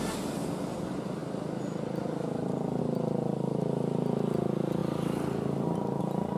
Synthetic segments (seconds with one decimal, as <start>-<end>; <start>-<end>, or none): none